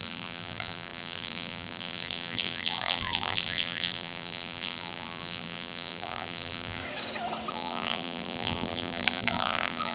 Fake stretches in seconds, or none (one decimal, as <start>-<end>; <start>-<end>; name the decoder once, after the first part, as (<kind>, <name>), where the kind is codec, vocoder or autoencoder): 0.0-6.8 (vocoder, BigVGAN v2); 7.5-9.9